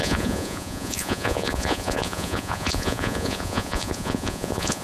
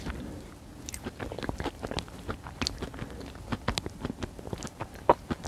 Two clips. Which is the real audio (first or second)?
second